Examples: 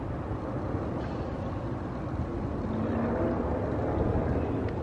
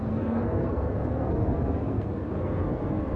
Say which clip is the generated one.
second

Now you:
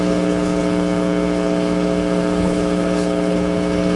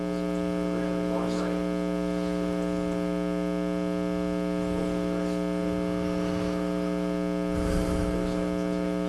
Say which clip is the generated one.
first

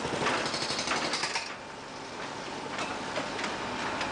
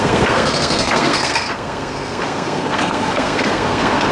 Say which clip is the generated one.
second